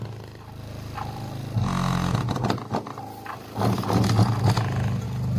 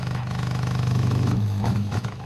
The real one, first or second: first